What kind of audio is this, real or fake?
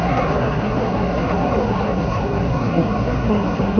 fake